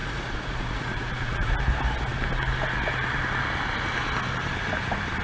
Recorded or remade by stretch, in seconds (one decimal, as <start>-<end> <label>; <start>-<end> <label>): 0.0-1.5 remade; 1.5-5.2 recorded